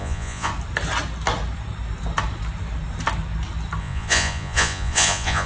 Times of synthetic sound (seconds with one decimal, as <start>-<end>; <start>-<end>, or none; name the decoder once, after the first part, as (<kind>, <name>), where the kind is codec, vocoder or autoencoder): 0.0-0.5 (vocoder, Vocos); 3.8-5.5